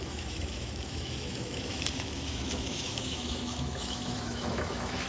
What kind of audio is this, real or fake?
fake